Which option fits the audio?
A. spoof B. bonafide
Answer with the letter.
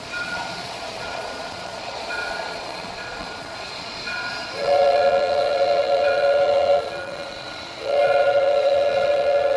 A